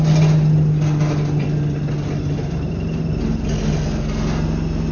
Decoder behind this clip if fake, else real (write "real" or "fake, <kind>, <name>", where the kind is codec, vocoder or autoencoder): real